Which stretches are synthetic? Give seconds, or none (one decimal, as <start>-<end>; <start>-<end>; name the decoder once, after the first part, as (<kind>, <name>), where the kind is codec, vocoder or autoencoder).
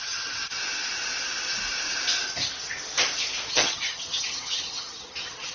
0.0-0.6 (vocoder, HiFi-GAN); 3.5-5.5